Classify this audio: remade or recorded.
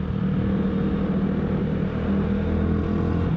recorded